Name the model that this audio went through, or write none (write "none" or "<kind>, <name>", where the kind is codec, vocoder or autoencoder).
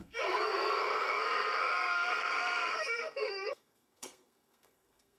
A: codec, SNAC